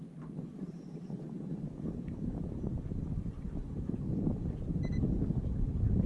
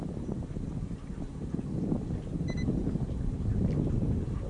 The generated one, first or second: first